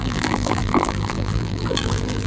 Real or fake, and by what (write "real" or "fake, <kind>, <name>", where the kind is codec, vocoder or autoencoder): fake, vocoder, BigVGAN v2